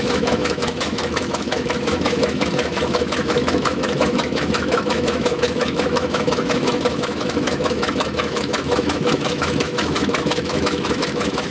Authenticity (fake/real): fake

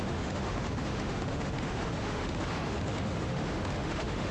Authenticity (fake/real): fake